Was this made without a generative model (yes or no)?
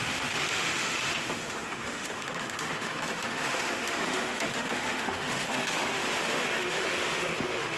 no